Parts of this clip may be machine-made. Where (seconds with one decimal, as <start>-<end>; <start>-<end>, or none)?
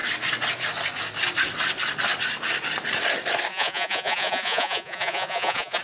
3.5-5.8